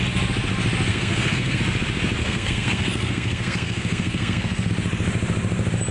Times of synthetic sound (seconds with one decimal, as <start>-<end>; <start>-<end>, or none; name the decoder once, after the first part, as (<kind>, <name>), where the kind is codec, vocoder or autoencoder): 0.9-1.6 (codec, SNAC); 2.2-4.7

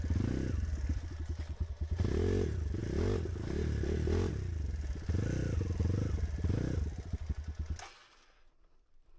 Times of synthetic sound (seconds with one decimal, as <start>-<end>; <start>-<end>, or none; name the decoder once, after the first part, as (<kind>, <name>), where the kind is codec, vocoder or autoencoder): none